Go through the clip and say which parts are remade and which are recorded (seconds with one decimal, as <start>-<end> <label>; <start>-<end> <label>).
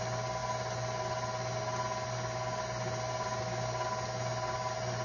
0.0-5.0 recorded